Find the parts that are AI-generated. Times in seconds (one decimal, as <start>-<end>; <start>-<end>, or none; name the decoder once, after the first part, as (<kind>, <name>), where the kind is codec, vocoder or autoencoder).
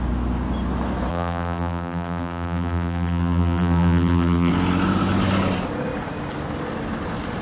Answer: 1.1-4.5 (vocoder, BigVGAN v2)